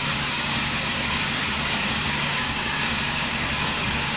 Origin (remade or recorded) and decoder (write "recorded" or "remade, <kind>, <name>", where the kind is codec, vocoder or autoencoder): remade, codec, DAC